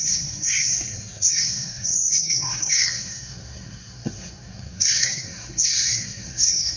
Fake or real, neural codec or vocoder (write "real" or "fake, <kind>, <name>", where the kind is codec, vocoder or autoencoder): fake, codec, SNAC